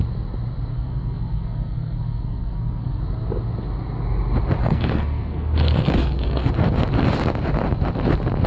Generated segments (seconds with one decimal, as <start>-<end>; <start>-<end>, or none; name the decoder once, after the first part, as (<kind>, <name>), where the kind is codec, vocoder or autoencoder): 0.7-3.0 (codec, SNAC); 4.6-6.5